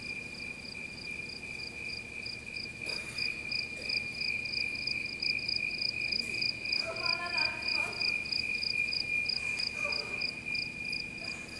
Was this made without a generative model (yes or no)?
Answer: yes